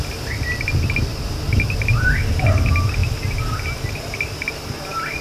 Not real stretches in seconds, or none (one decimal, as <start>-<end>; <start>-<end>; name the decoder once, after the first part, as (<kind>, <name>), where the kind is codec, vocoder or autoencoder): none